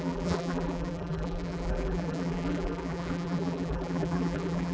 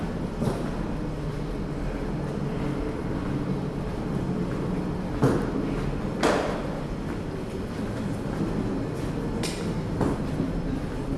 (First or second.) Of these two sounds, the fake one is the first